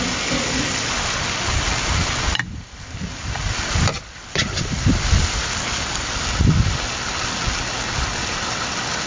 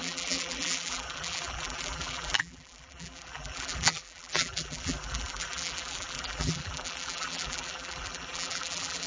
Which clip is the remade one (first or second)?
second